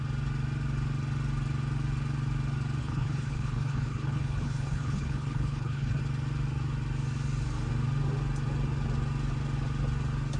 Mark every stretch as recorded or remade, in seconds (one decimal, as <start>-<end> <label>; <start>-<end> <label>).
0.0-2.8 recorded; 2.8-6.0 remade; 6.0-10.4 recorded